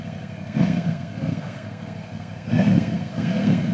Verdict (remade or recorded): remade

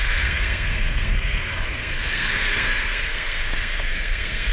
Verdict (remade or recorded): remade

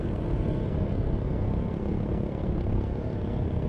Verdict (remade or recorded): remade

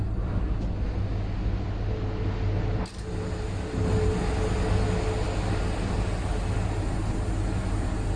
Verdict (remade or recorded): recorded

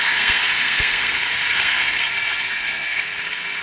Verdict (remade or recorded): remade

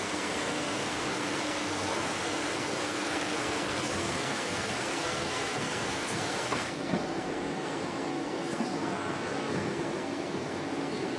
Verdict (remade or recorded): remade